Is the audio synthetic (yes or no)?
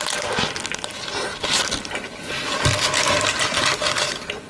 no